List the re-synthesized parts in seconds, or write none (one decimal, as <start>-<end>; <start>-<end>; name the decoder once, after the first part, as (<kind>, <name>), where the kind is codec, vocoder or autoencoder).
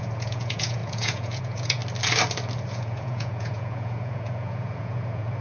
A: 0.0-1.8 (vocoder, Vocos); 2.7-5.4